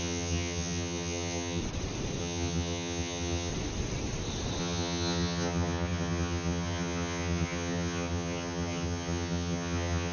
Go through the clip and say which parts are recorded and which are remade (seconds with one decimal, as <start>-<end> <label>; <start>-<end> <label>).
0.0-1.6 remade; 1.6-2.2 recorded; 2.2-3.5 remade; 3.5-4.6 recorded; 4.6-10.1 remade